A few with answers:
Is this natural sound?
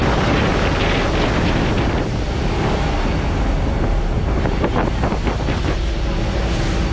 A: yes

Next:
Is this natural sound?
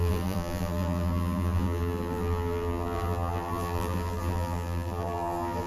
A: no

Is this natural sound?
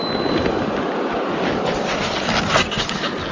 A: yes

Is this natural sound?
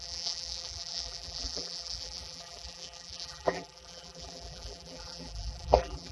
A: no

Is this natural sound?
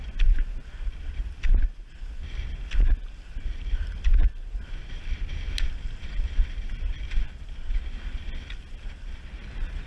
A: yes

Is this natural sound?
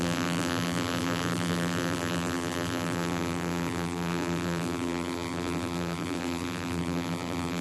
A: no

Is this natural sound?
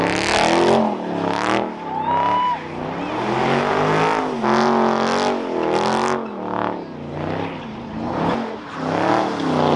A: yes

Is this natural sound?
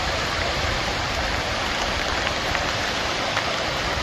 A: no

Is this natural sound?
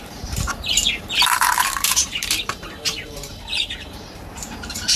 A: no